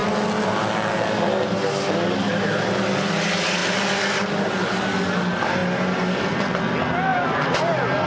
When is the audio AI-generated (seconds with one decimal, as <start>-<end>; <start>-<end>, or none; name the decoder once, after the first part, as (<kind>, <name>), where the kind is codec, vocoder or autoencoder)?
3.6-4.3 (vocoder, BigVGAN v2); 7.1-8.1